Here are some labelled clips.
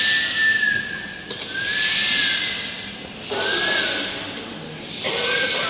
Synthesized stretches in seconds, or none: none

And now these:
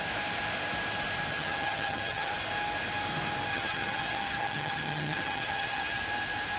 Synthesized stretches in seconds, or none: 1.3-2.3 (vocoder, HiFi-GAN); 3.5-6.0

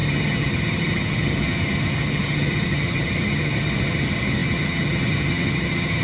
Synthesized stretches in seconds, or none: 0.0-6.0 (vocoder, HiFi-GAN)

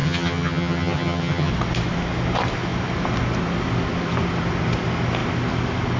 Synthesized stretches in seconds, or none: 0.0-1.5 (vocoder, HiFi-GAN)